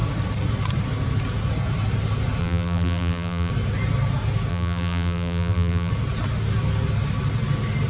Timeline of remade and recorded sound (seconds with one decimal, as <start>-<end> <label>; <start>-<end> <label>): 0.0-2.4 recorded; 2.4-3.5 remade; 3.5-4.5 recorded; 4.5-5.9 remade; 5.9-7.9 recorded

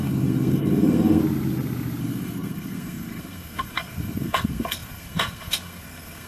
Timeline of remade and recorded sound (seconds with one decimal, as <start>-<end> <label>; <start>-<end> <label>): 0.0-1.2 remade; 1.2-2.0 recorded; 2.0-6.3 remade

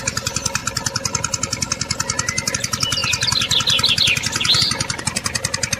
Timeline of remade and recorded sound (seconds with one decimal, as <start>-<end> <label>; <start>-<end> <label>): 0.0-0.6 remade; 0.6-2.5 recorded; 2.5-3.0 remade; 3.0-4.6 recorded; 4.6-5.8 remade

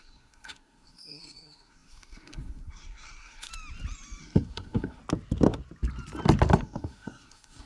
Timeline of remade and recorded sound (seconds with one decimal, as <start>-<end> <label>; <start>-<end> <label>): 0.0-3.5 remade; 3.5-4.2 recorded; 4.2-5.0 remade; 5.0-6.6 recorded; 6.6-7.7 remade

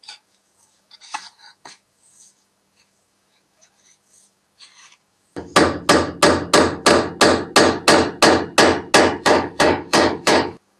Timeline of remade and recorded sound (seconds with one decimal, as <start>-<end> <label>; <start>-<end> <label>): 0.0-5.5 remade; 5.5-9.2 recorded; 9.2-10.8 remade

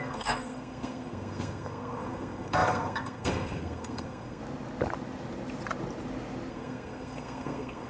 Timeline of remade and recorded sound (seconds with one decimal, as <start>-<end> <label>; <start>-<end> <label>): 0.0-4.4 remade; 4.4-6.5 recorded; 6.5-7.9 remade

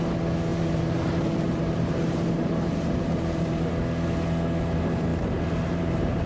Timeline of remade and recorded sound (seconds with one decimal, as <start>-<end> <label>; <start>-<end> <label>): 0.0-0.5 recorded; 0.5-3.7 remade; 3.7-5.1 recorded; 5.1-6.3 remade